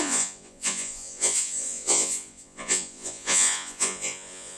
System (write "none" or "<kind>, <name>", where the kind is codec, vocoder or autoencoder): vocoder, Vocos